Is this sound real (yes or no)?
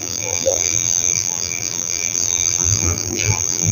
no